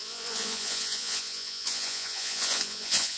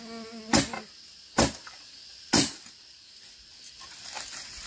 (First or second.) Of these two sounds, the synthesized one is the first